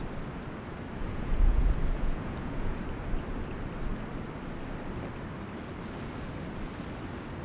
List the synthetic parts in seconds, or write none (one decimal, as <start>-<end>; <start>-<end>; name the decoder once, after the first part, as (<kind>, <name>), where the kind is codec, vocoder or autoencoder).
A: 1.0-2.8 (vocoder, Vocos)